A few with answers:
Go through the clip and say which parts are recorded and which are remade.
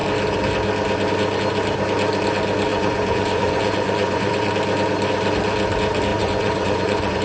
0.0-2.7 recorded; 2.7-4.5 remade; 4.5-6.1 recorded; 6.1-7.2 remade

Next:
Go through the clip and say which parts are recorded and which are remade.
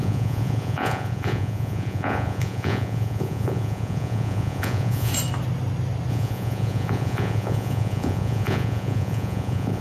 0.0-5.1 remade; 5.1-6.1 recorded; 6.1-9.8 remade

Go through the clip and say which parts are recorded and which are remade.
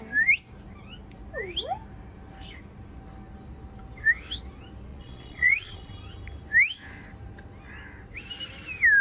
0.0-4.9 recorded; 4.9-5.9 remade; 5.9-9.0 recorded